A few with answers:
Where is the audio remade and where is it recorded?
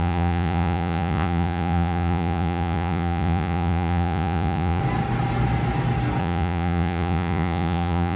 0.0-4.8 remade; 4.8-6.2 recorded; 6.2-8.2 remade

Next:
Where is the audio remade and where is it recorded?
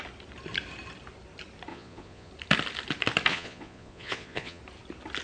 0.0-1.7 recorded; 1.7-2.3 remade; 2.3-3.3 recorded; 3.3-4.6 remade; 4.6-5.2 recorded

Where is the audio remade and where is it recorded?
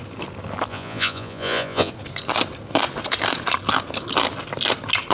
0.0-0.7 recorded; 0.7-1.9 remade; 1.9-5.1 recorded